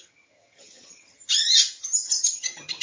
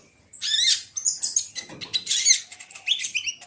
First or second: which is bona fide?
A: second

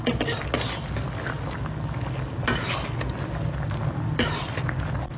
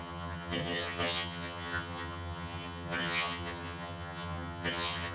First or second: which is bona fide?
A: first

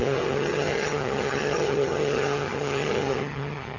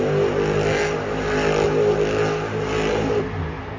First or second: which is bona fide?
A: second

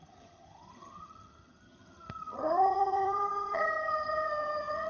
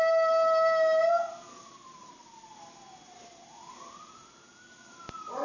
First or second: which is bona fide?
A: second